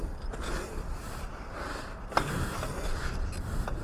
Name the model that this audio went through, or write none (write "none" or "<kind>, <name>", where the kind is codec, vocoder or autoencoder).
vocoder, BigVGAN v2